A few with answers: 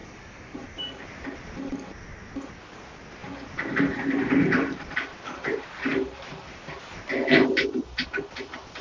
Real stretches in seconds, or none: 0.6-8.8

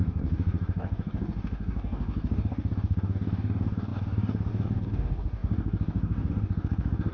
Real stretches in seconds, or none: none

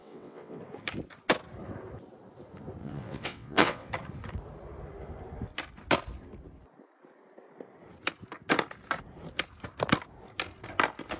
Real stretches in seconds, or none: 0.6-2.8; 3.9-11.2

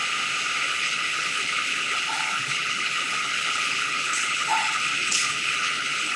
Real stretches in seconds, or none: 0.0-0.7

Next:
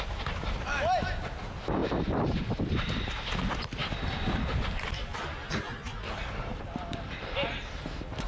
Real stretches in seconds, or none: 0.0-1.8; 2.9-3.8; 5.2-6.5; 7.8-8.3

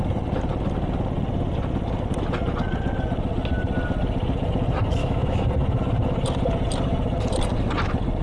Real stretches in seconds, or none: 0.0-5.0; 5.5-8.2